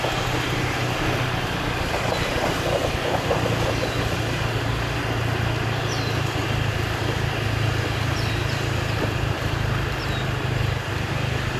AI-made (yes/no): no